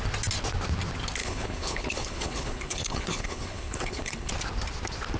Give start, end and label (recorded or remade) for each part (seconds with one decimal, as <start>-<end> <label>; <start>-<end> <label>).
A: 0.0-1.2 recorded; 1.2-4.3 remade; 4.3-5.2 recorded